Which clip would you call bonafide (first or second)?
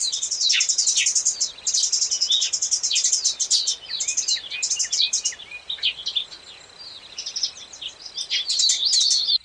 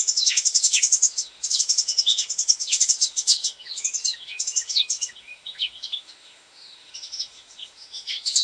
first